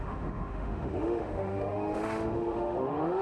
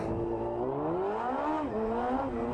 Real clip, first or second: second